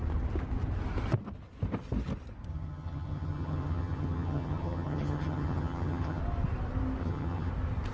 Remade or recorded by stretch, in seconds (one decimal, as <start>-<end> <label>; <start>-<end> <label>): 0.0-2.5 recorded; 2.5-6.2 remade; 6.2-7.0 recorded; 7.0-7.5 remade; 7.5-7.9 recorded